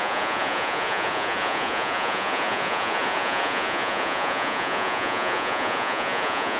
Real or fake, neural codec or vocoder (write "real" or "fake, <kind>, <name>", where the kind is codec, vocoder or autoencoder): fake, vocoder, Vocos